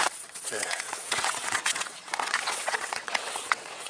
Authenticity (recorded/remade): remade